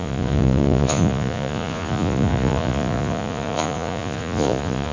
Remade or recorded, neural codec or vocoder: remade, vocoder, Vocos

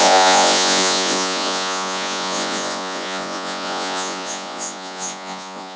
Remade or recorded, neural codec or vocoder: remade, vocoder, Vocos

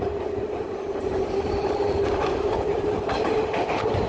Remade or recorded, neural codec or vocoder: remade, vocoder, BigVGAN v2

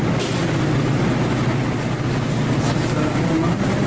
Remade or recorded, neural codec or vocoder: recorded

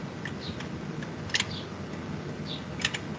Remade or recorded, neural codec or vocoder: recorded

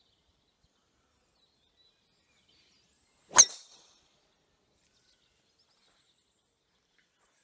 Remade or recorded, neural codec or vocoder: recorded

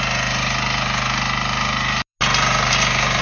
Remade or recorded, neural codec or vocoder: recorded